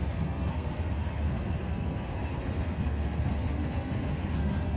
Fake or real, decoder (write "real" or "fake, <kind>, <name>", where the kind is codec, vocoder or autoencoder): fake, codec, SNAC